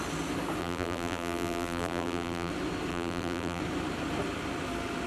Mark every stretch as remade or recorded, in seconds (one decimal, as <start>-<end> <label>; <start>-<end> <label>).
0.0-0.6 recorded; 0.6-2.5 remade; 2.5-2.9 recorded; 2.9-3.6 remade; 3.6-5.1 recorded